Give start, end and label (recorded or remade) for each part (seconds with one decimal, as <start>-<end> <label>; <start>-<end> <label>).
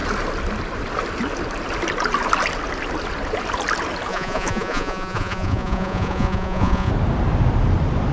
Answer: 0.0-4.1 recorded; 4.1-6.9 remade; 6.9-8.1 recorded